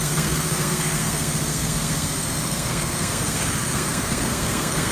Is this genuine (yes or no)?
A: no